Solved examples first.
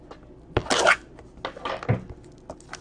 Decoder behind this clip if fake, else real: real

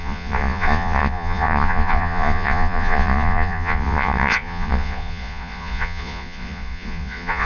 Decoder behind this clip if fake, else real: fake, vocoder, Vocos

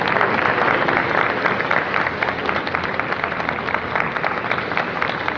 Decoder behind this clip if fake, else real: real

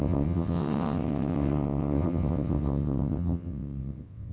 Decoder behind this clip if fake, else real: fake, vocoder, WaveNeXt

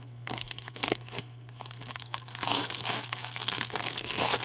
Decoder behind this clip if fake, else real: fake, codec, SNAC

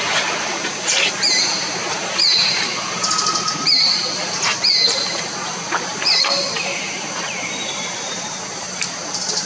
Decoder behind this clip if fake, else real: fake, vocoder, BigVGAN v2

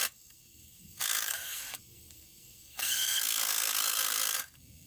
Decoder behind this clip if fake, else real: fake, codec, SNAC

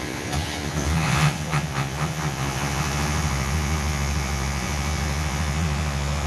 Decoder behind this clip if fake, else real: fake, vocoder, Vocos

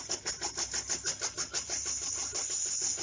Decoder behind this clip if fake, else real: real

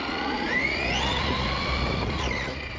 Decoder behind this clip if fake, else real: fake, vocoder, Vocos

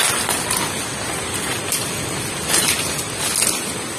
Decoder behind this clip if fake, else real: real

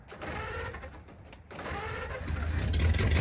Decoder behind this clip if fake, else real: fake, vocoder, BigVGAN v2